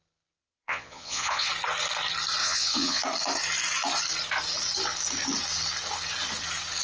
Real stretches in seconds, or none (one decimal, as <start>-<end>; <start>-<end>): 0.0-0.4; 1.5-2.4; 3.0-6.8

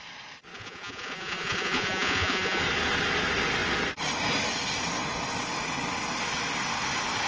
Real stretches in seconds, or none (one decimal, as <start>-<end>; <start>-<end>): 0.0-0.5; 2.6-7.3

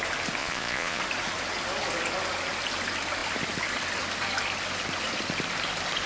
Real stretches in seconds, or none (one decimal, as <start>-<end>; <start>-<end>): 0.0-0.4; 1.0-6.1

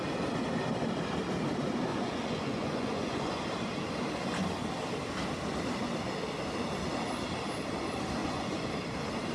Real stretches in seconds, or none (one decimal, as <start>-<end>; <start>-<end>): 0.0-1.9; 3.4-8.2; 8.7-9.3

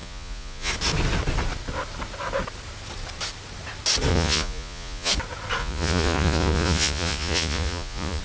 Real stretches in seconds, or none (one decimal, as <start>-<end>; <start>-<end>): 0.7-4.1; 5.1-5.6

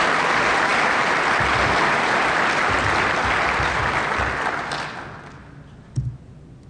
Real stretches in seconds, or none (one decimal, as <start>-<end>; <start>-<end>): 0.0-6.7

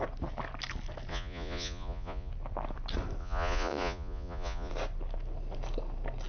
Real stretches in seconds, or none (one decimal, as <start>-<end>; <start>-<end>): 0.0-1.1; 2.3-3.2; 4.7-6.3